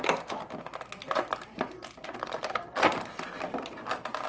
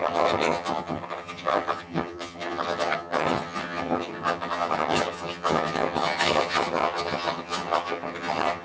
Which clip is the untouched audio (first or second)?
first